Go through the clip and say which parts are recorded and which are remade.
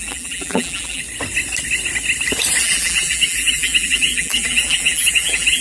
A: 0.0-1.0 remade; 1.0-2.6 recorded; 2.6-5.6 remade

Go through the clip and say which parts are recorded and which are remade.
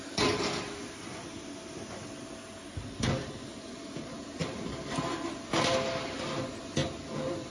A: 0.0-4.4 recorded; 4.4-5.0 remade; 5.0-6.8 recorded; 6.8-7.5 remade